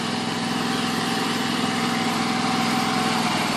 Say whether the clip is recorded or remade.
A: remade